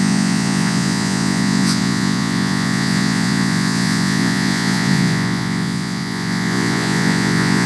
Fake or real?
fake